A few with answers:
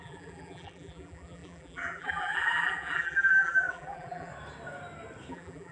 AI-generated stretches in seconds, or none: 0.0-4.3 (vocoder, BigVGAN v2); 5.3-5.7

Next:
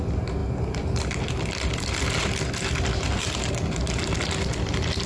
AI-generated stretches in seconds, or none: none

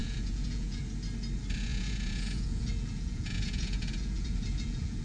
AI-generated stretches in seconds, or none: 0.0-0.8 (vocoder, Vocos); 1.7-5.0

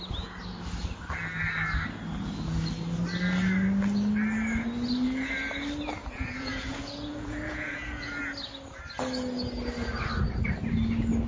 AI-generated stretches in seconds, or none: 6.0-8.2 (vocoder, Vocos)

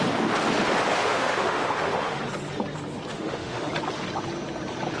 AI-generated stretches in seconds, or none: 0.9-2.2 (autoencoder, DAC-VAE); 3.1-3.7

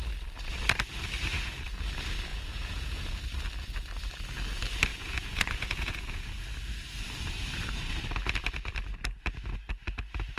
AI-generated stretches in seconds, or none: 1.3-1.8 (vocoder, Vocos); 2.3-3.2; 4.9-6.3

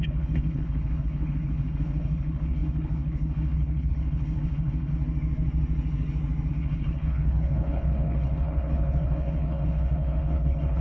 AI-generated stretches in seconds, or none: 0.0-4.9 (codec, HILCodec); 6.5-10.8